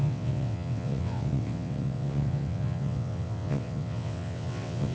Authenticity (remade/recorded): remade